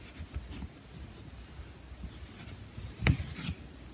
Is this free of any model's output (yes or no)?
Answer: yes